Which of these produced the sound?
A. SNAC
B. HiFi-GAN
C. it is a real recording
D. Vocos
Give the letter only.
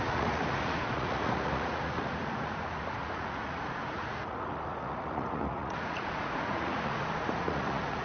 D